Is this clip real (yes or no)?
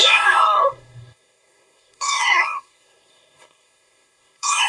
no